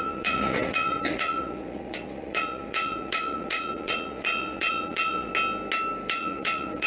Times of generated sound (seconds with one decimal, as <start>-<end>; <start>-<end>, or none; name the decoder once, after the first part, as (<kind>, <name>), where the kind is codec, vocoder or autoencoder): 0.0-5.3 (vocoder, Vocos); 6.1-6.9